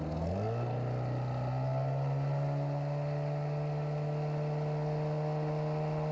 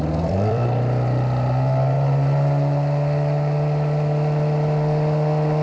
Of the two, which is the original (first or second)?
first